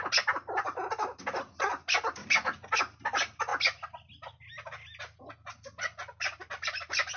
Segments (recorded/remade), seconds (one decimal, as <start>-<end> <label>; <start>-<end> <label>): 0.0-2.2 recorded; 2.2-2.8 remade; 2.8-7.2 recorded